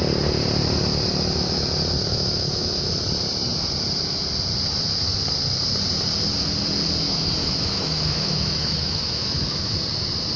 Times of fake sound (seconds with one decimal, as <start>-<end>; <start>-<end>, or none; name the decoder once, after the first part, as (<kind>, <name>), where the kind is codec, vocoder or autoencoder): 2.1-2.9 (autoencoder, DAC-VAE); 7.4-9.8